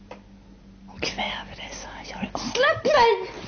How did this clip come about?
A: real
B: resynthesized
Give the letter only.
A